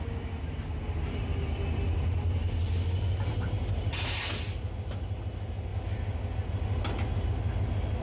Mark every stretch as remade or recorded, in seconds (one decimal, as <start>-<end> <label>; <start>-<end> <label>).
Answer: 0.0-8.0 recorded